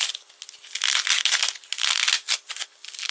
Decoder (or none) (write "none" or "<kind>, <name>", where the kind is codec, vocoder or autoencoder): none